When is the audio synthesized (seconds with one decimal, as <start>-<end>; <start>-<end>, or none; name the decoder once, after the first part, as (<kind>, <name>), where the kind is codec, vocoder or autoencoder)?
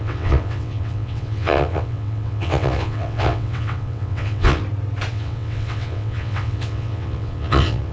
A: 0.0-4.6 (vocoder, WaveNeXt); 5.1-7.9